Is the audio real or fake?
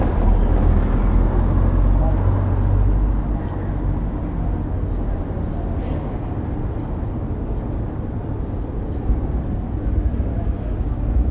real